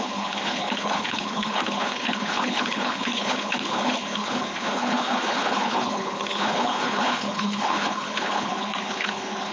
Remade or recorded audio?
remade